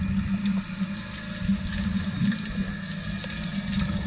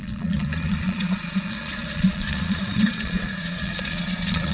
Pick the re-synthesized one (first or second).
second